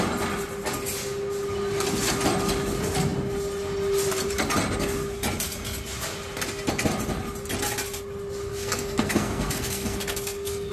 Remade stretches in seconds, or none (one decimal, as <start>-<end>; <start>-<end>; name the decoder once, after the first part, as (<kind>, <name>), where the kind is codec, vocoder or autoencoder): 8.5-10.7 (codec, SNAC)